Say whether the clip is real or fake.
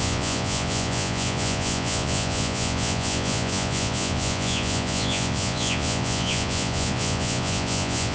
fake